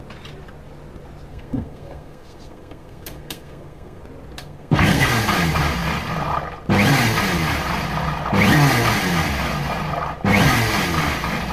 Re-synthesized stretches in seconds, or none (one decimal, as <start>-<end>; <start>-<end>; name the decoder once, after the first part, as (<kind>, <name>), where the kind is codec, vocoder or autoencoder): 1.3-4.0 (codec, SNAC); 4.4-5.1